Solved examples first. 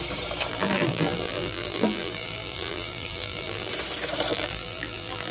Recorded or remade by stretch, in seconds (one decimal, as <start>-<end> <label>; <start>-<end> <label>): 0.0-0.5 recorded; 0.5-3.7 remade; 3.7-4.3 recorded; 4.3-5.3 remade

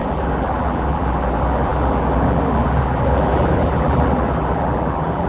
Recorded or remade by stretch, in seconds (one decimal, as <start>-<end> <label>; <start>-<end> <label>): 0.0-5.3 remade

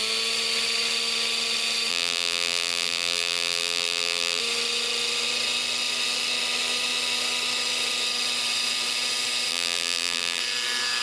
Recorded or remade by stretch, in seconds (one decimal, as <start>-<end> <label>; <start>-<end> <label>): 0.0-1.9 recorded; 1.9-4.4 remade; 4.4-9.5 recorded; 9.5-10.4 remade; 10.4-11.0 recorded